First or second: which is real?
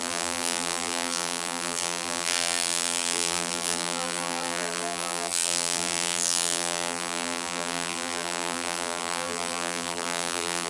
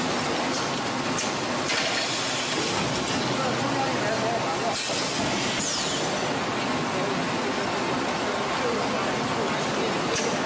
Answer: second